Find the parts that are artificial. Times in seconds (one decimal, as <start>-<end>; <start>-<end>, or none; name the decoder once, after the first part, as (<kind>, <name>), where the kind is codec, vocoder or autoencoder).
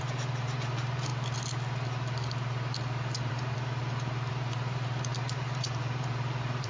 0.0-1.1 (vocoder, BigVGAN v2); 3.3-3.8; 4.3-6.7